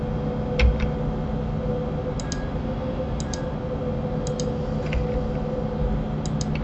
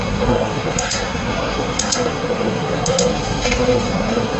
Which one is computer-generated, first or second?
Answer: second